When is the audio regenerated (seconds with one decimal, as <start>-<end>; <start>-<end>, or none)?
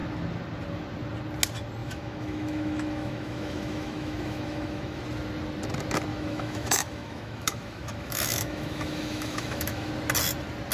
1.8-5.0; 6.1-9.9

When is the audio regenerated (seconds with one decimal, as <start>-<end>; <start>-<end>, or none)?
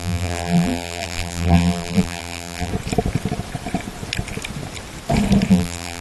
0.0-2.7; 5.5-6.0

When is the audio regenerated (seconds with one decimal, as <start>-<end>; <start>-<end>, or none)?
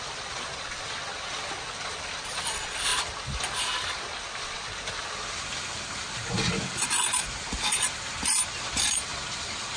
2.9-3.6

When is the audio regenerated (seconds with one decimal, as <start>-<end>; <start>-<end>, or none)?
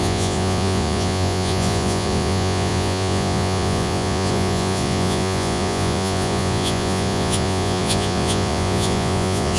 0.0-9.6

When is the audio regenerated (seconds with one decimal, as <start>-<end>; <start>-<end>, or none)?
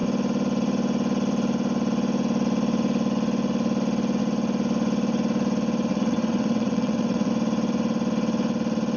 5.9-7.3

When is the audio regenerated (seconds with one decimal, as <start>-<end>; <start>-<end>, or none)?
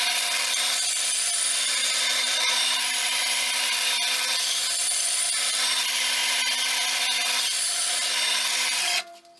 1.8-2.9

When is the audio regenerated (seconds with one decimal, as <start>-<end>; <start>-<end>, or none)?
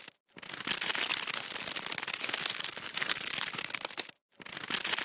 none